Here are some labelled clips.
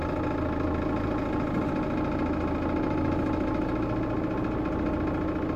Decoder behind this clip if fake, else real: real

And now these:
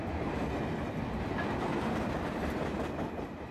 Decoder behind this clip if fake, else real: real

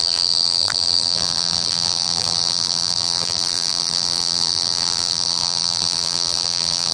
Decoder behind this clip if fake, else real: fake, vocoder, BigVGAN v2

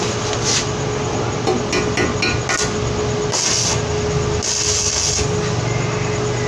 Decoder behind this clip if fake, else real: real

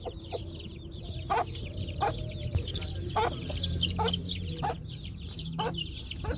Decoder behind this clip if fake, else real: fake, vocoder, BigVGAN v2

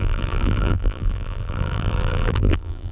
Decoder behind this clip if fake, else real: fake, vocoder, BigVGAN v2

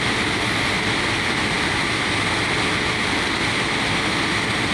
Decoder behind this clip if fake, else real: real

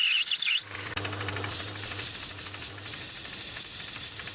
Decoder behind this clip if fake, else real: real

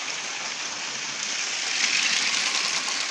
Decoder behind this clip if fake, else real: real